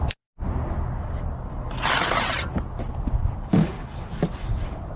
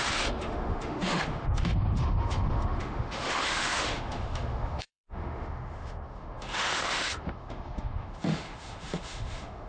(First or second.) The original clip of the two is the first